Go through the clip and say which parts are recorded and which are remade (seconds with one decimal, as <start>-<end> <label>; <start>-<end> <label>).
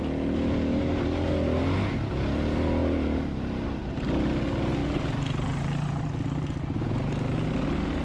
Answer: 0.0-8.0 recorded